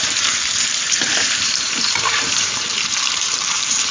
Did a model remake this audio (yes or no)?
yes